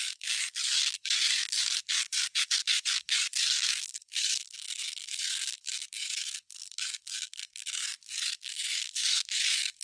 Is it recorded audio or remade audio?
remade